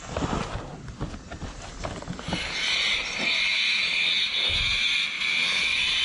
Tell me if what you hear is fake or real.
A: real